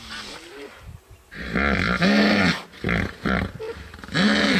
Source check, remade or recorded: recorded